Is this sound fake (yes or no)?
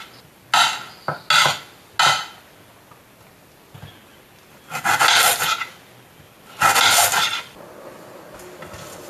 no